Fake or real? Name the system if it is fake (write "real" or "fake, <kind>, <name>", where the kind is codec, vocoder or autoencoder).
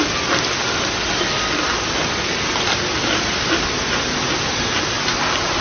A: real